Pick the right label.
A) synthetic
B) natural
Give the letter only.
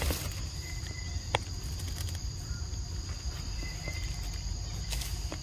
B